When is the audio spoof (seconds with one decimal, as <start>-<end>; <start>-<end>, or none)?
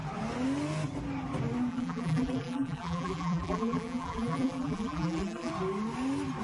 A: 1.7-5.5